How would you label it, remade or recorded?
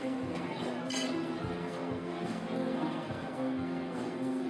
remade